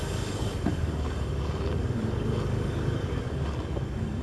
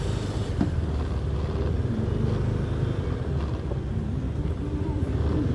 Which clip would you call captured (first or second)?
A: second